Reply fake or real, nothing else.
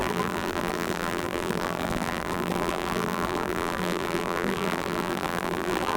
fake